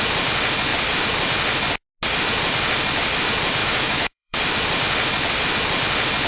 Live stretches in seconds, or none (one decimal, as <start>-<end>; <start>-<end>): 0.0-3.6; 4.4-6.3